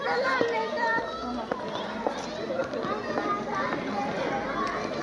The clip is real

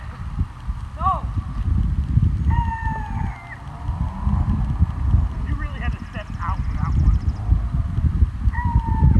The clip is real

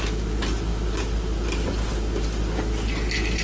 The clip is real